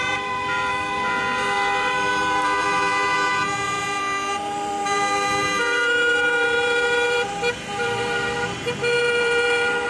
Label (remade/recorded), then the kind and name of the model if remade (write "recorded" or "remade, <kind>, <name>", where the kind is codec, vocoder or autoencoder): remade, vocoder, BigVGAN v2